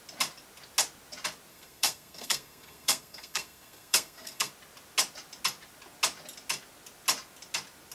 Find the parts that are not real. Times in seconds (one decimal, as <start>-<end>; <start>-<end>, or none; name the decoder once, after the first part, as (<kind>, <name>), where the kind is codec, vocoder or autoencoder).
1.5-4.5 (codec, SNAC)